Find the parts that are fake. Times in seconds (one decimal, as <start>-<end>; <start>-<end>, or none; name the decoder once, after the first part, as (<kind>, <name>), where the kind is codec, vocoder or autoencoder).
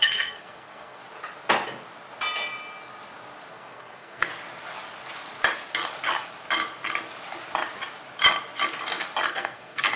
0.0-1.0 (codec, SNAC); 3.5-4.3; 9.3-10.0